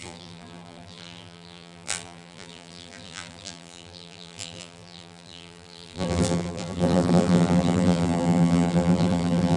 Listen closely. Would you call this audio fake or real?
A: fake